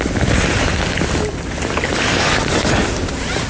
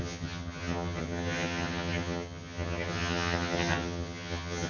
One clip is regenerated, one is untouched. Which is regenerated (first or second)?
second